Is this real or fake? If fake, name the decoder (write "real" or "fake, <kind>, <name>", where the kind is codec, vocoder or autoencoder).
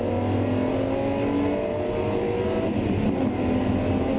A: real